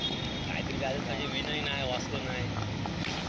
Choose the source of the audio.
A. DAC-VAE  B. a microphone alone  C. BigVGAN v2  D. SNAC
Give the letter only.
B